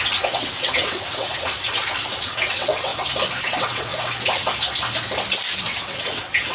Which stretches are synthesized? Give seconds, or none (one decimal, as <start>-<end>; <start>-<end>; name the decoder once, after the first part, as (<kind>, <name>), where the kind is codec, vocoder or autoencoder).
0.0-2.9 (vocoder, WaveNeXt); 3.4-3.9; 5.6-6.5